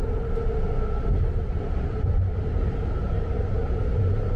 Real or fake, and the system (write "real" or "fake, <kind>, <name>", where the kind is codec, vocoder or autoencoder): real